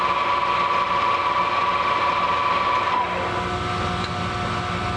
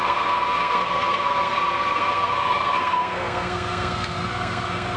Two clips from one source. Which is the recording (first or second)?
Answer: first